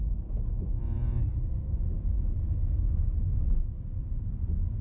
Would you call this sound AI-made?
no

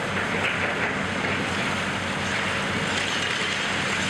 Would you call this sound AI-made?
no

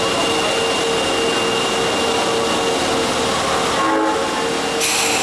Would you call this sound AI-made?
no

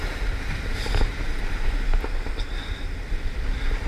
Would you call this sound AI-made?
no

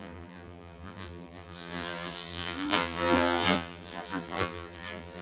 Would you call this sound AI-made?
yes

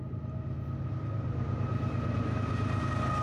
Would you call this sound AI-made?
no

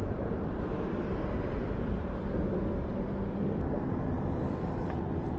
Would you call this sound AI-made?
yes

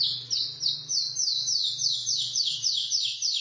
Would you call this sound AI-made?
no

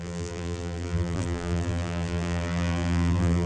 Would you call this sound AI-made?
yes